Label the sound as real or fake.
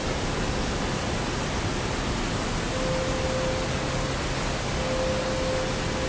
real